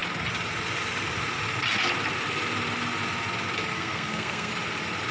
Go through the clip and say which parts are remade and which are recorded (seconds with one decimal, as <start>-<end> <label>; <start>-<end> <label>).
0.0-3.7 recorded; 3.7-4.5 remade; 4.5-5.1 recorded